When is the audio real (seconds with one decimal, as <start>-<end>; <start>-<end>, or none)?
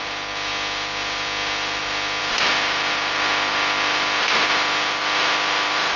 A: 0.0-2.2